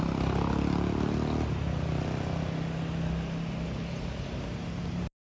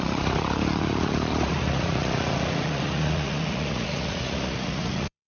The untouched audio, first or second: first